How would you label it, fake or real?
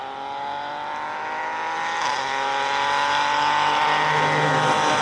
real